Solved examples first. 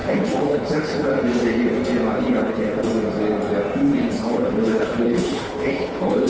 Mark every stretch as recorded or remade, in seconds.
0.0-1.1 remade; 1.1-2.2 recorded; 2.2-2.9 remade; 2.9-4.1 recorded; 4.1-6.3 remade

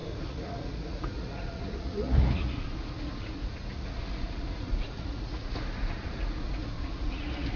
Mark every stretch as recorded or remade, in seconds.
0.0-7.6 remade

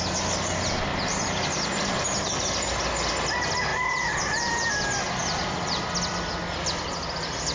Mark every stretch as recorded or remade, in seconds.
0.0-0.9 recorded; 0.9-2.2 remade; 2.2-3.7 recorded; 3.7-4.7 remade; 4.7-5.2 recorded; 5.2-5.8 remade; 5.8-7.5 recorded